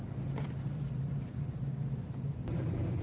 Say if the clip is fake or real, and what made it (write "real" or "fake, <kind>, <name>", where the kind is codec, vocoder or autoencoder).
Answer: fake, vocoder, BigVGAN v2